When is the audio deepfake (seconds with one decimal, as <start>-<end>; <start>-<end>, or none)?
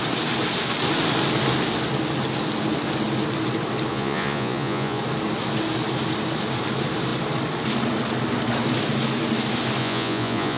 3.9-5.0; 9.8-10.6